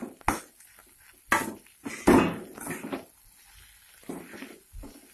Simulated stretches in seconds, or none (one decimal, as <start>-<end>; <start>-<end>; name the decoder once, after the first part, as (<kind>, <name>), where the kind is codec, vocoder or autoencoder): none